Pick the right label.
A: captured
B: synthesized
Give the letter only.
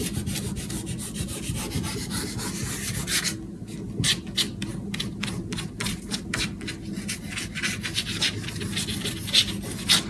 A